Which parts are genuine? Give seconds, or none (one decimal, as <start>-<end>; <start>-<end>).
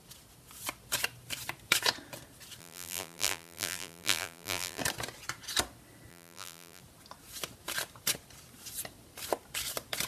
0.0-2.6; 4.8-6.1; 6.8-10.1